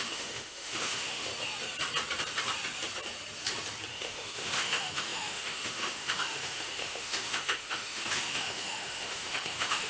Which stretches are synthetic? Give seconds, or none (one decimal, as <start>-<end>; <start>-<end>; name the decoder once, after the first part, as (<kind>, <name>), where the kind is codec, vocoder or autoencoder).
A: 0.0-1.3 (autoencoder, DAC-VAE); 3.9-9.9